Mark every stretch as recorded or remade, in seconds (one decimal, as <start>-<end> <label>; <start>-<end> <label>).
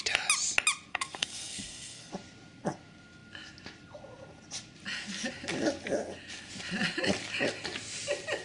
0.0-0.9 recorded; 0.9-2.1 remade; 2.1-8.4 recorded